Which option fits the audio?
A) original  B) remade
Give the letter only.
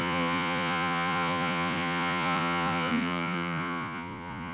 B